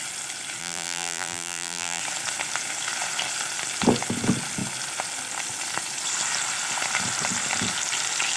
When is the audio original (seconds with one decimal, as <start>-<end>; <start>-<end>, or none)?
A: 0.0-0.6; 2.0-8.4